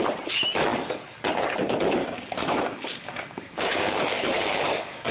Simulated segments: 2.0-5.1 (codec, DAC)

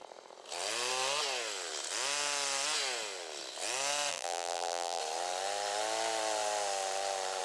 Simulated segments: 4.1-5.0 (vocoder, BigVGAN v2)

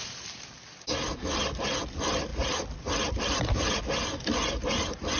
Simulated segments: 2.3-3.8 (vocoder, BigVGAN v2)